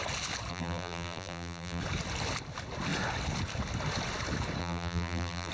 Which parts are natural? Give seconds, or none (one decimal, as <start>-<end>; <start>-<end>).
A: 0.0-0.5; 1.8-4.6